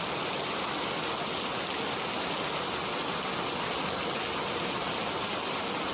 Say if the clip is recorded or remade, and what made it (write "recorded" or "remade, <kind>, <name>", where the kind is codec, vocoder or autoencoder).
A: recorded